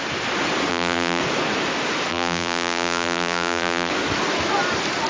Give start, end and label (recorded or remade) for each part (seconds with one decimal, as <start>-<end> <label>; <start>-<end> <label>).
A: 0.0-0.7 recorded; 0.7-1.2 remade; 1.2-2.1 recorded; 2.1-3.9 remade; 3.9-5.1 recorded